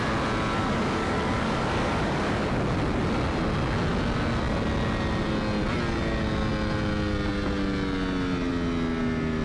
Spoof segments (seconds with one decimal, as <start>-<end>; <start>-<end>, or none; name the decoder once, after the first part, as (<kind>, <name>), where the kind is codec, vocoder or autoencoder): 0.6-2.5 (codec, DAC)

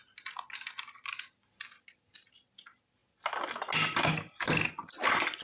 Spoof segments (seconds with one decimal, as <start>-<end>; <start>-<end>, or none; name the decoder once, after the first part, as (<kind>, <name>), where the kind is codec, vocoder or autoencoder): none

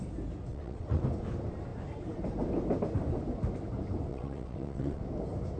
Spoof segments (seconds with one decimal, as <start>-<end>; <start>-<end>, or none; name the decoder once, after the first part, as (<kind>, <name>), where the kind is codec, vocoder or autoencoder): 0.5-1.0 (vocoder, WaveNeXt); 4.1-5.0